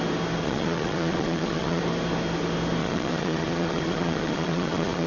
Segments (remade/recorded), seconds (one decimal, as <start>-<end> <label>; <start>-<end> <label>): 0.0-0.4 recorded; 0.4-1.8 remade; 1.8-2.8 recorded; 2.8-5.1 remade